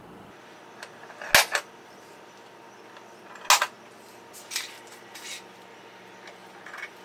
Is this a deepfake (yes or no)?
no